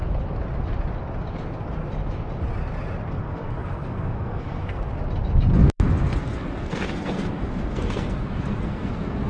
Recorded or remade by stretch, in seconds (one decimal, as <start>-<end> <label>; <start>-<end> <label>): 0.0-3.1 recorded; 3.1-4.9 remade; 4.9-6.2 recorded; 6.2-9.3 remade